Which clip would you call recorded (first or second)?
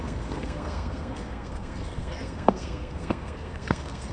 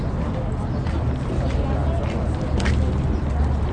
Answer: second